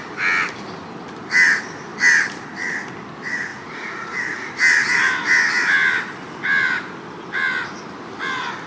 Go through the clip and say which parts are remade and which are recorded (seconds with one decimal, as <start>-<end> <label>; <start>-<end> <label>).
0.0-3.5 recorded; 3.5-4.5 remade; 4.5-8.7 recorded